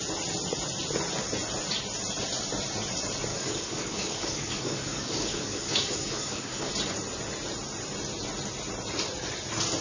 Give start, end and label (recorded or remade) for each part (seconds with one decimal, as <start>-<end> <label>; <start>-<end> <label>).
0.0-3.3 recorded; 3.3-6.7 remade; 6.7-9.8 recorded